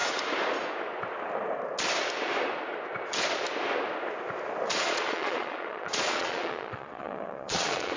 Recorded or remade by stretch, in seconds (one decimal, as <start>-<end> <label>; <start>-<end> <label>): 0.0-4.7 recorded; 4.7-8.0 remade